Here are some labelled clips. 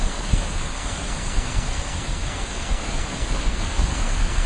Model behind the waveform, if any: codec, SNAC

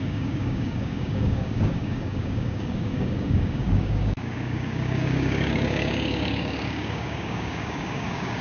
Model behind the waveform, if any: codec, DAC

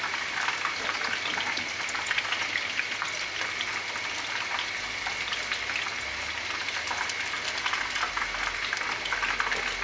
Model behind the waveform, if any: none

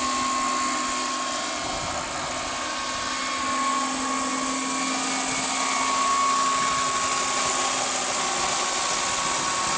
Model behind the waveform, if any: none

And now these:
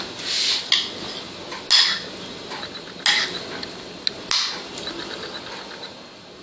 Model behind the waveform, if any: none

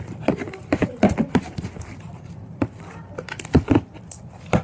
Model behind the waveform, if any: vocoder, BigVGAN v2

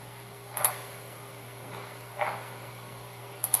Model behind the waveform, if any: codec, SNAC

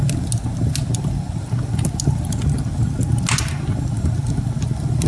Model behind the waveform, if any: none